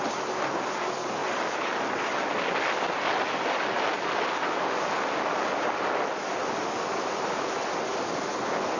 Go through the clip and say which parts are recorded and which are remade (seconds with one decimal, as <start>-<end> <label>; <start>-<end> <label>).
0.0-8.8 recorded